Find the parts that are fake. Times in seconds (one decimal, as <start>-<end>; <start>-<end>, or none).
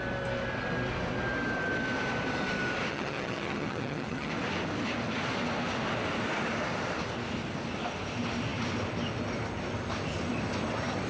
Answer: 2.9-4.3